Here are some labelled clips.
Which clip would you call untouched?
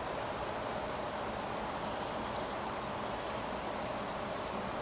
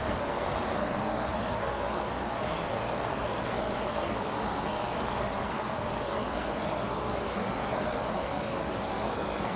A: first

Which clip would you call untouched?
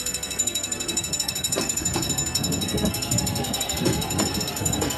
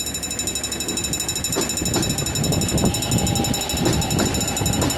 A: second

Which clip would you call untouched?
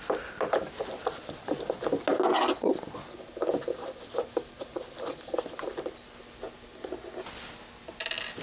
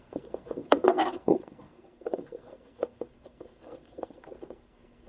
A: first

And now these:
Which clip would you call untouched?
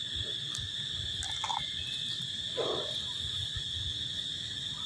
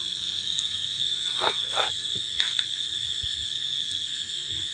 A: first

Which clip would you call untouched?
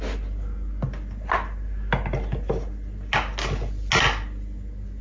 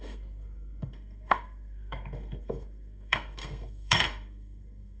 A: first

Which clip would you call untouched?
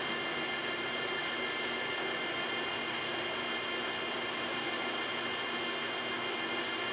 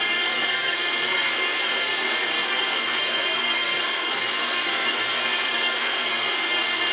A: first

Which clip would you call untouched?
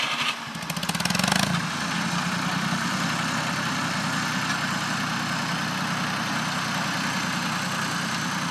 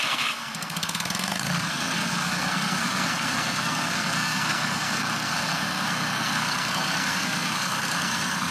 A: first